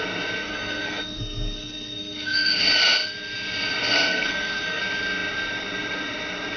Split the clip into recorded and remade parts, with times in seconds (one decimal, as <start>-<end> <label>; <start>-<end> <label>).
0.0-0.4 recorded; 0.4-2.6 remade; 2.6-4.1 recorded; 4.1-4.8 remade; 4.8-6.6 recorded